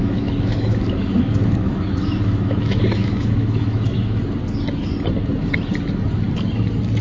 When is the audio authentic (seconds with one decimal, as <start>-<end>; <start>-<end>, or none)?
4.2-7.0